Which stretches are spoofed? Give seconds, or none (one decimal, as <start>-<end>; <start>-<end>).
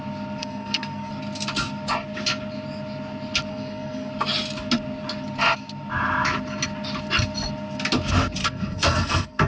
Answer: 0.4-1.1; 3.5-4.1; 8.4-9.5